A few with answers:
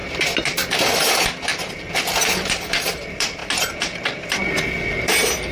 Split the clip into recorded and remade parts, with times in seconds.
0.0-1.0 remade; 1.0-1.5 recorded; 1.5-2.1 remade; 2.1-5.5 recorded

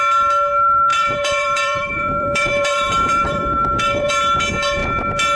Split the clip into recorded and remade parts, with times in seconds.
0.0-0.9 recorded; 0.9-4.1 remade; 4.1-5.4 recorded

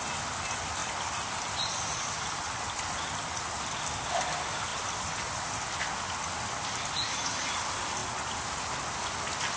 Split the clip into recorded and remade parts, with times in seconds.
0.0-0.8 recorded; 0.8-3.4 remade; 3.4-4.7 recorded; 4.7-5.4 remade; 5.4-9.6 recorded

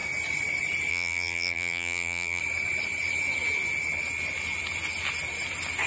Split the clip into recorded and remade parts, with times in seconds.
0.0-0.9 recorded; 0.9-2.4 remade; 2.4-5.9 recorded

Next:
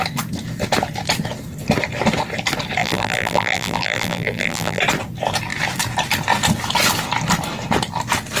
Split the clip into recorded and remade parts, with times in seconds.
0.0-2.8 recorded; 2.8-4.8 remade; 4.8-8.4 recorded